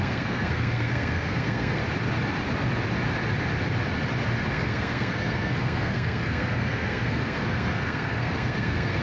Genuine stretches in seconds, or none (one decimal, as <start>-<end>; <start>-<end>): 1.8-4.5